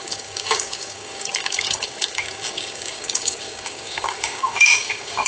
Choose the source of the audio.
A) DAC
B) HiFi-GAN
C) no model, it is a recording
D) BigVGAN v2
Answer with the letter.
A